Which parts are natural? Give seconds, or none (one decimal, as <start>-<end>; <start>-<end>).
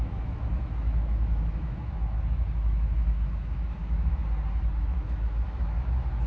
4.2-4.8